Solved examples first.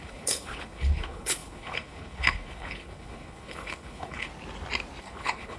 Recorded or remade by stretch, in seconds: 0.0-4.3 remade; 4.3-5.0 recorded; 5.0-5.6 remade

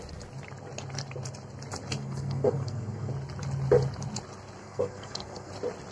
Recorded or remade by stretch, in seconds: 0.0-2.0 recorded; 2.0-3.1 remade; 3.1-4.6 recorded; 4.6-5.5 remade; 5.5-5.9 recorded